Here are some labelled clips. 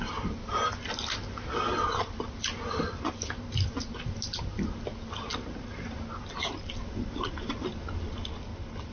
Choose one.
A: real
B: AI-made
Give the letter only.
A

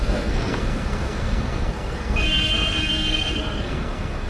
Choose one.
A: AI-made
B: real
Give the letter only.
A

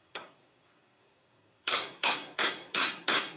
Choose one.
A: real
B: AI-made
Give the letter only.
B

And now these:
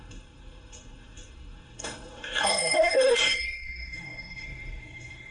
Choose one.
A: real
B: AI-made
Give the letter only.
B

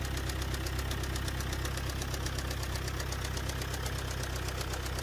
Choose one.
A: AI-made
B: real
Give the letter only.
B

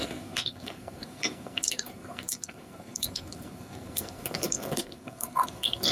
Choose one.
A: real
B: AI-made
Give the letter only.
B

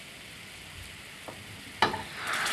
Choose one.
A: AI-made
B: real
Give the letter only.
B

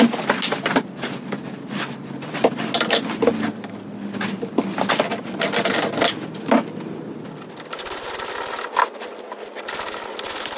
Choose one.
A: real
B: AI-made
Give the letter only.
A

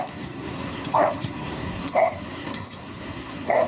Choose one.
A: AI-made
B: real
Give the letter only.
A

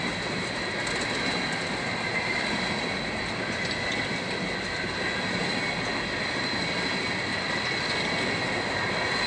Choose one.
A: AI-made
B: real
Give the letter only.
B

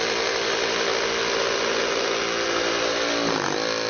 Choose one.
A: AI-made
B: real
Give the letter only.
B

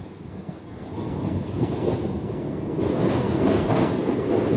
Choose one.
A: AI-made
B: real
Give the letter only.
A